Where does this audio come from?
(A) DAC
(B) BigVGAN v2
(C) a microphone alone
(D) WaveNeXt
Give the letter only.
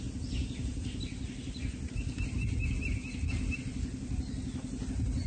C